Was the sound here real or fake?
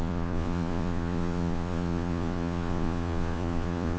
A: fake